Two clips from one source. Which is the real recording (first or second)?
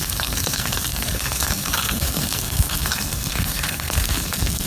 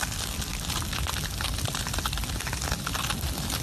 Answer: second